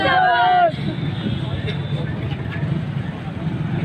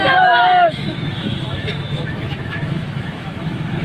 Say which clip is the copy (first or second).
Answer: second